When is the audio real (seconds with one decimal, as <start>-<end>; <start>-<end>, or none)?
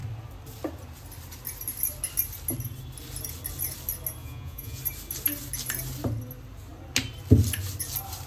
0.0-4.2; 4.8-8.3